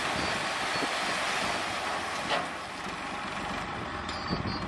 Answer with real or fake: real